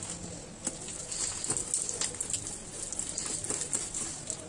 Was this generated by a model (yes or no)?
no